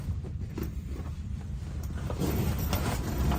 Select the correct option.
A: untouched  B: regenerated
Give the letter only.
A